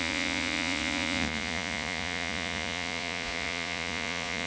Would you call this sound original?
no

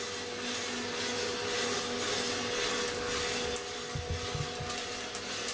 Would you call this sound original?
yes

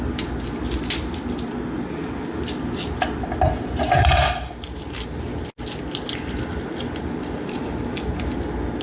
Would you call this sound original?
yes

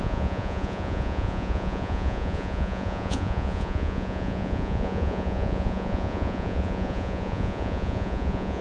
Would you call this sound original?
no